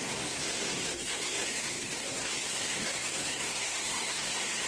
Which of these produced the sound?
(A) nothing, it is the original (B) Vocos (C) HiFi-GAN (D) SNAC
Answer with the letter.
D